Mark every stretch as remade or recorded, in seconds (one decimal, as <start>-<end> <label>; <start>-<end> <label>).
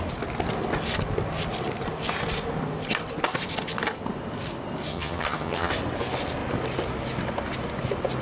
0.0-4.9 recorded; 4.9-5.7 remade; 5.7-8.2 recorded